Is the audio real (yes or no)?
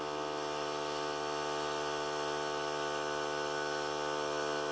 yes